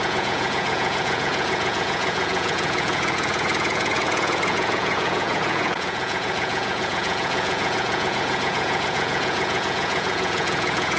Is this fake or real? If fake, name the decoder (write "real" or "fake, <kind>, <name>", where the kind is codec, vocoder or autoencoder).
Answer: fake, vocoder, Vocos